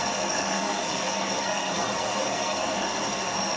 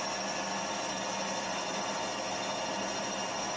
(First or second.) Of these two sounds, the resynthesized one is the first